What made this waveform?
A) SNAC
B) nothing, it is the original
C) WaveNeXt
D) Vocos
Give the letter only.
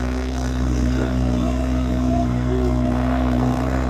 A